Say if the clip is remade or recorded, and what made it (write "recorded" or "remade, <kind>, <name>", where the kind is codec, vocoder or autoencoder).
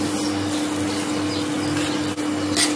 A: recorded